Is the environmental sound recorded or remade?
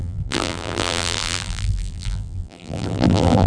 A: remade